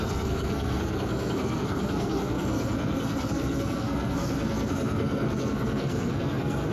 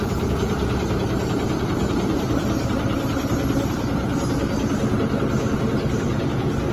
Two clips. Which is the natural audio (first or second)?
second